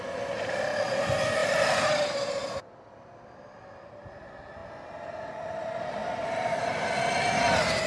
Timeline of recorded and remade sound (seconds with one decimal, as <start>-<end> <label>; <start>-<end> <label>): 0.0-1.4 recorded; 1.4-2.8 remade; 2.8-7.9 recorded